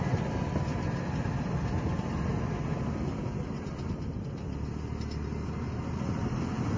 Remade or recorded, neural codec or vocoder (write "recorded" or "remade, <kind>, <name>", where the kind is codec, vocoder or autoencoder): recorded